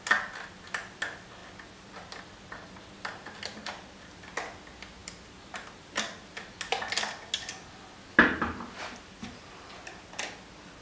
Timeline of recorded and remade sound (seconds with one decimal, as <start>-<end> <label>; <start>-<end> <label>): 0.0-10.8 recorded